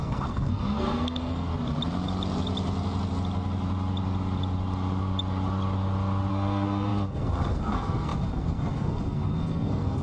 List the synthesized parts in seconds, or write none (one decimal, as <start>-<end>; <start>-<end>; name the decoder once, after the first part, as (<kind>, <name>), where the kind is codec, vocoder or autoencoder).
0.0-1.5 (codec, SNAC); 6.3-10.0